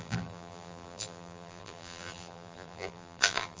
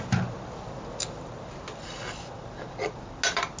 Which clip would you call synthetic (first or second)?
first